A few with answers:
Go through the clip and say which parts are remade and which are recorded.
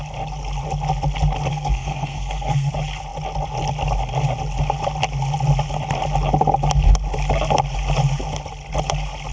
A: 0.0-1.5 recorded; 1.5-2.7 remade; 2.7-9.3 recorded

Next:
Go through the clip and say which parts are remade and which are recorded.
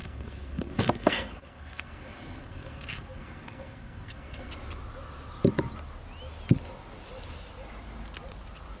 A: 0.0-4.5 remade; 4.5-8.8 recorded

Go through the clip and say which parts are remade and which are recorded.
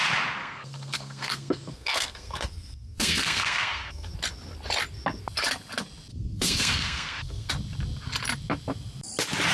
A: 0.0-0.4 recorded; 0.4-4.1 remade; 4.1-6.1 recorded; 6.1-7.5 remade; 7.5-9.5 recorded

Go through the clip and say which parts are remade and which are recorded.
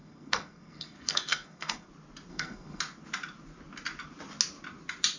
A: 0.0-1.9 remade; 1.9-2.3 recorded; 2.3-2.8 remade; 2.8-5.2 recorded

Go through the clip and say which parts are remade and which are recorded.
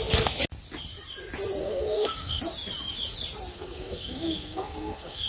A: 0.0-1.6 recorded; 1.6-2.4 remade; 2.4-3.5 recorded; 3.5-5.3 remade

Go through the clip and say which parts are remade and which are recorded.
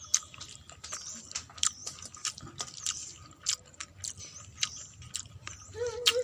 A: 0.0-6.2 recorded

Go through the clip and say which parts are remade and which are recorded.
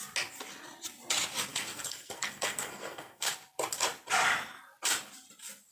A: 0.0-1.5 recorded; 1.5-3.3 remade; 3.3-5.7 recorded